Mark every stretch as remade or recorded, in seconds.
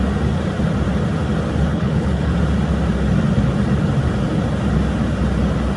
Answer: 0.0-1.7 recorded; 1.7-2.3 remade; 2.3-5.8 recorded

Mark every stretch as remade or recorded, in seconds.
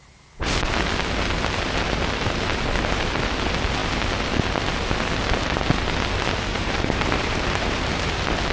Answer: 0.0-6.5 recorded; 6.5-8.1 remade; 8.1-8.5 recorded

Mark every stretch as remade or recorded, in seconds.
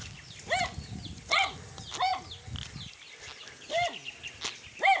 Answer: 0.0-5.0 recorded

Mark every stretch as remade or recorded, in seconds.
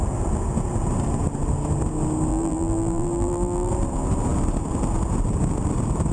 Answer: 0.0-2.3 recorded; 2.3-3.7 remade; 3.7-6.1 recorded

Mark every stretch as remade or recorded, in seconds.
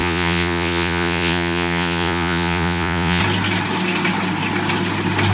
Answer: 0.0-3.2 remade; 3.2-5.3 recorded